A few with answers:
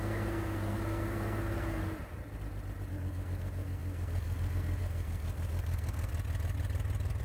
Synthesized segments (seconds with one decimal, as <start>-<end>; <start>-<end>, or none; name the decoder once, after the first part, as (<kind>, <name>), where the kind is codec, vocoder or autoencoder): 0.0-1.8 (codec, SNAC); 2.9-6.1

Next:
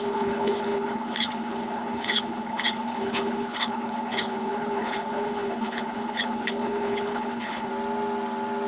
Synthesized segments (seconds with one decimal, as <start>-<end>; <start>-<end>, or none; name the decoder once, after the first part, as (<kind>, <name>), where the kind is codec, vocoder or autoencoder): 0.0-7.7 (codec, HILCodec)

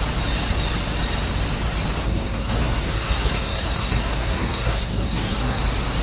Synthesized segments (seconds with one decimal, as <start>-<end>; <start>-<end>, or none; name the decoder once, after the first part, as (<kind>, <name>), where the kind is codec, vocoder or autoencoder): 2.0-5.6 (codec, SNAC)

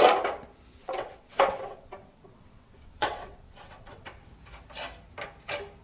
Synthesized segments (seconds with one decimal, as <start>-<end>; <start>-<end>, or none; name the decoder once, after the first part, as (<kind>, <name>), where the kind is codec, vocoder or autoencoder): 0.8-4.3 (vocoder, WaveNeXt)

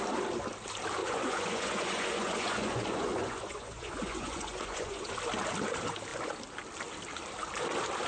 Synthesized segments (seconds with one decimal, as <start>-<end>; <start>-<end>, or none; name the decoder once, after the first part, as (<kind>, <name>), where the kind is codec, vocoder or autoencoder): 1.0-5.1 (vocoder, Vocos)

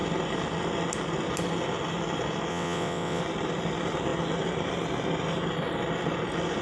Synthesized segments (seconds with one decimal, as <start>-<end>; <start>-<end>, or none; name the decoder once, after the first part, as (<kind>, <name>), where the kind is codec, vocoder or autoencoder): 2.5-3.2 (vocoder, WaveNeXt)

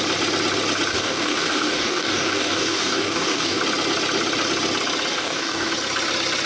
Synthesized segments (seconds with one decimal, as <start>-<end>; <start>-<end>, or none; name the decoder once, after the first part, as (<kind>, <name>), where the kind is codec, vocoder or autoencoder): 0.9-3.6 (codec, DAC); 5.1-5.7